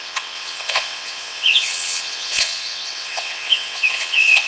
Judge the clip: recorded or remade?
remade